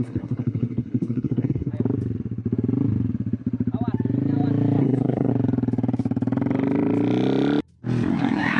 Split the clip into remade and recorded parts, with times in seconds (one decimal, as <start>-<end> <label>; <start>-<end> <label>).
0.0-1.7 remade; 1.7-4.8 recorded; 4.8-5.3 remade; 5.3-8.1 recorded; 8.1-8.6 remade